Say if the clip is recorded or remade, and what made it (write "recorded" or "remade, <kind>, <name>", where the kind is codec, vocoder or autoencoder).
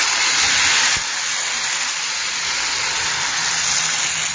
recorded